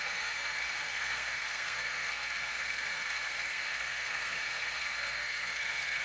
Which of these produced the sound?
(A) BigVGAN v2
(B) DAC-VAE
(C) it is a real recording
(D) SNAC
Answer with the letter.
D